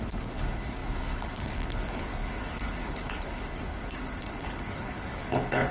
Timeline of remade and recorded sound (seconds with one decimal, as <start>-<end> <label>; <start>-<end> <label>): 0.0-5.7 remade